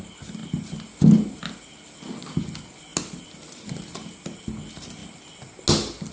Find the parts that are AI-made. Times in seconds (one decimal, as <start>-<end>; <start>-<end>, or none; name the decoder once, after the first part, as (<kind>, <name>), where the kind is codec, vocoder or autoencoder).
none